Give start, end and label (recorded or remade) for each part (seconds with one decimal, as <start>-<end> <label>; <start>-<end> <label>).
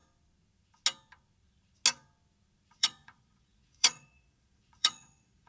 0.0-2.7 recorded; 2.7-5.5 remade